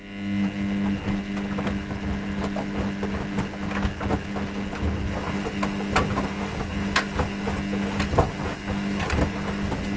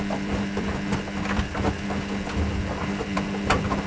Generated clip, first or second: second